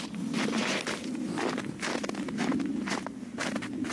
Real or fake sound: real